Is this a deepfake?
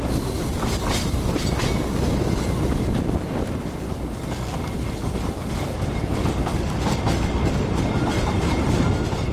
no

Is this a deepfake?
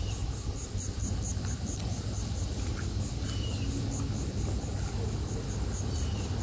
no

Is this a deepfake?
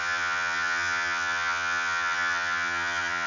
yes